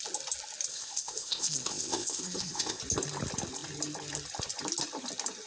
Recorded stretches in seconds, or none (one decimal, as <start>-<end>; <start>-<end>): 0.0-0.7; 2.8-5.5